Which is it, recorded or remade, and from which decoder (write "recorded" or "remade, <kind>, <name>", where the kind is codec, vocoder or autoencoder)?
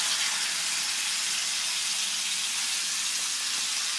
recorded